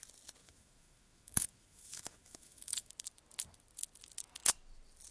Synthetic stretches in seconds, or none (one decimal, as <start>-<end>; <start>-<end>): 0.4-2.9